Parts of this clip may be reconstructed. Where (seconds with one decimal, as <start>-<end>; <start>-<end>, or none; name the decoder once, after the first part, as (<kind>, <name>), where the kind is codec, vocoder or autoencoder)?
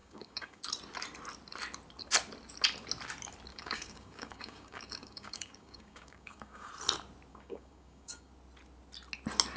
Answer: 0.0-0.6 (codec, DAC); 3.5-6.7; 7.3-8.3